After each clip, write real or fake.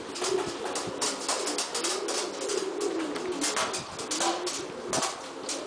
real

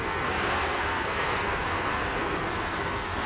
fake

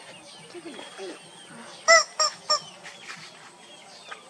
real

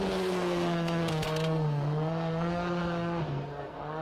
fake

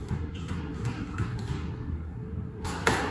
fake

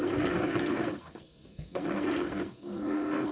fake